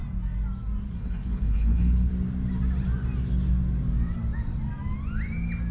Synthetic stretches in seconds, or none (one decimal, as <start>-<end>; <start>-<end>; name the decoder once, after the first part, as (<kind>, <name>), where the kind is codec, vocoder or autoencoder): 1.0-2.1 (codec, HILCodec)